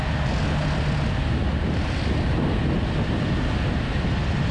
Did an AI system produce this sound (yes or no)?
no